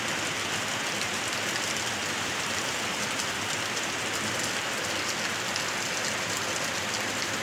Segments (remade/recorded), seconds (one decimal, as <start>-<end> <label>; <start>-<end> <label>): 0.0-2.0 recorded; 2.0-3.0 remade; 3.0-7.4 recorded